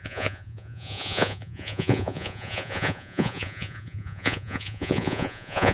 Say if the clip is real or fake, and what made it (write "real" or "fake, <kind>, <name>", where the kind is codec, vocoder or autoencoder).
fake, vocoder, Vocos